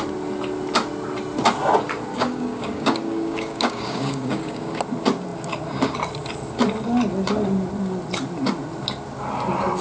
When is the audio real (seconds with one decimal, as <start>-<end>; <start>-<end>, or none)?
0.0-2.1; 4.8-9.8